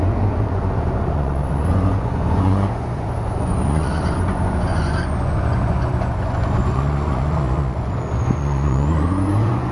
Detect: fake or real fake